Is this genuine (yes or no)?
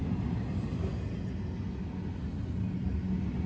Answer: yes